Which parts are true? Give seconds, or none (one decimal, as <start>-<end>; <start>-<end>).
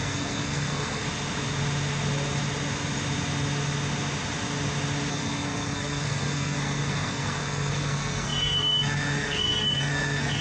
1.0-5.1